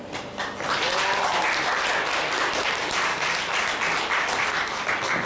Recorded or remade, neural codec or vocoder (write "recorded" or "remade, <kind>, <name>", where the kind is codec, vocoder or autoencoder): recorded